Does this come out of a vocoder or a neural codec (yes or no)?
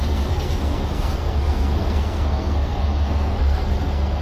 yes